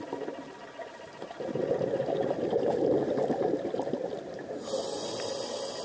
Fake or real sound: real